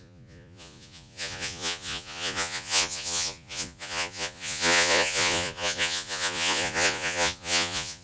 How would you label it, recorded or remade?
remade